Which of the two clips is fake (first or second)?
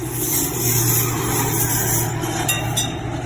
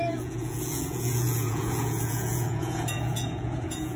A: second